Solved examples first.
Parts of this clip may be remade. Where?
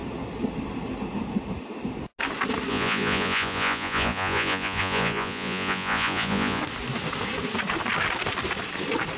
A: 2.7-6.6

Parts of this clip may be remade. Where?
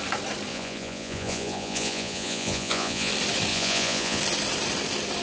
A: 0.5-3.1; 3.5-4.2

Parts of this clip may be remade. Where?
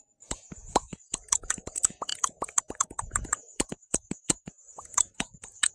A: 0.0-5.7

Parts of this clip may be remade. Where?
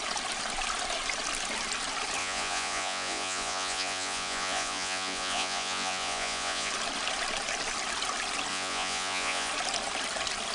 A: 2.2-6.7; 8.5-9.5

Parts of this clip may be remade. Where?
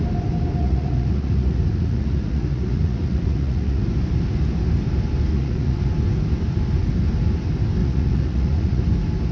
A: 0.6-3.9; 5.3-5.8; 7.8-8.8